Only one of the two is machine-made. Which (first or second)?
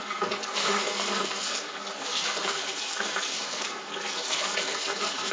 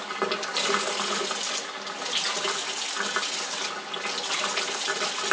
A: first